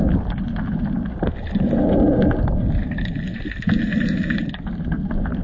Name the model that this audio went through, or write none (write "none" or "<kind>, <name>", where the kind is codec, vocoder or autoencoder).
none